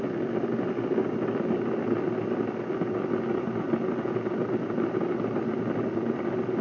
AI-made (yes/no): no